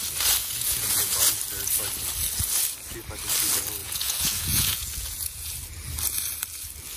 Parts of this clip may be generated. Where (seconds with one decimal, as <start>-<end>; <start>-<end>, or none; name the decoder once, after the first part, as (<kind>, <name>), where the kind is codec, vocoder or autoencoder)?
0.4-1.2 (vocoder, Vocos); 3.8-5.5